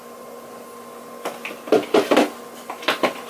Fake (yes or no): no